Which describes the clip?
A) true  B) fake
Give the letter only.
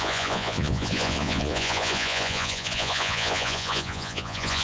B